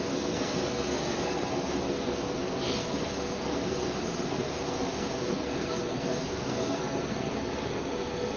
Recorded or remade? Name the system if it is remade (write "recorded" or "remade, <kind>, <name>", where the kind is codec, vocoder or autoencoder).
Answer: remade, codec, SNAC